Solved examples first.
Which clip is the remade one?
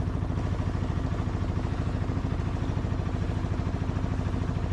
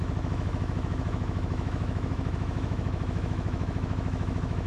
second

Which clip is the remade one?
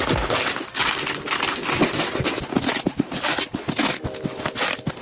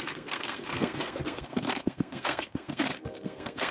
second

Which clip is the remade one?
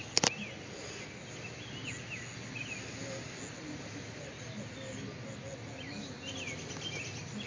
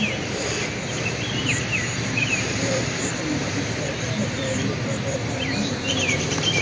second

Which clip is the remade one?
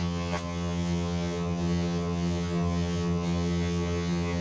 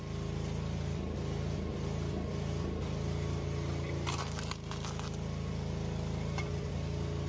first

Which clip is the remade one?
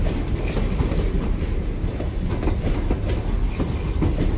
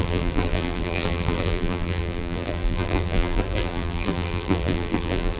second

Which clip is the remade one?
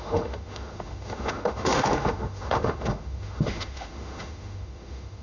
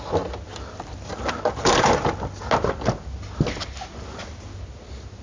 first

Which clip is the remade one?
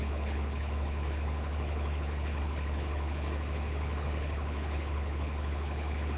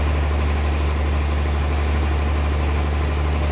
first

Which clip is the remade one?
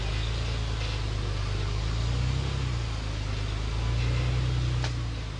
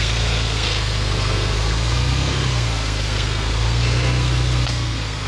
second